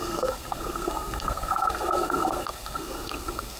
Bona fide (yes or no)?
no